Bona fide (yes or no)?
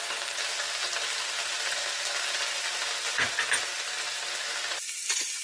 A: yes